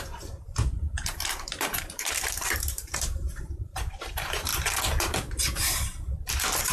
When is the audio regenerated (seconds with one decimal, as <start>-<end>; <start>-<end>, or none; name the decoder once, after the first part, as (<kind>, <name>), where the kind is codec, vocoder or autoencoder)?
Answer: 0.0-4.5 (vocoder, BigVGAN v2); 5.0-5.9